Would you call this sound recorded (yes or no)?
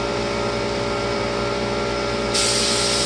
yes